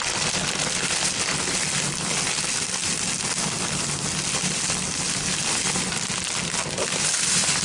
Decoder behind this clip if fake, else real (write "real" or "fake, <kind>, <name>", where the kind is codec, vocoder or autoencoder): real